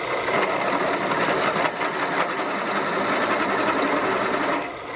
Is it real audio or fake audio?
real